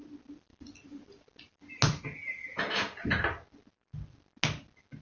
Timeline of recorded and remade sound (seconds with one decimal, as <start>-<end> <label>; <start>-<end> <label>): 0.0-2.3 recorded; 2.3-3.2 remade; 3.2-5.0 recorded